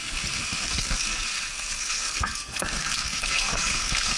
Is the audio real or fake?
fake